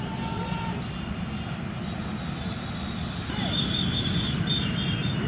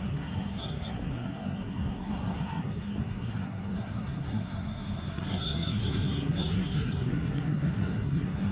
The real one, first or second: first